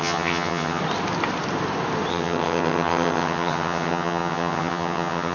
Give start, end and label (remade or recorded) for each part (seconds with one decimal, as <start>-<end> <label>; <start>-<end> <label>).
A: 0.0-0.8 remade; 0.8-2.1 recorded; 2.1-5.3 remade